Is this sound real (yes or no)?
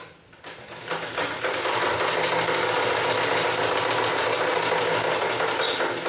yes